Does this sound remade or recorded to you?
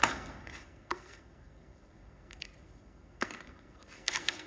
remade